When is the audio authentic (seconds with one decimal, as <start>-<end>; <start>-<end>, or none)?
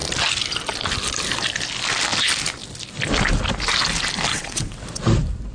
0.0-4.3; 4.8-5.5